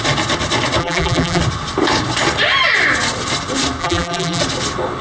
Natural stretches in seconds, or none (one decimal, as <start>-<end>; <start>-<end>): 0.0-0.8; 1.4-3.8; 4.4-5.0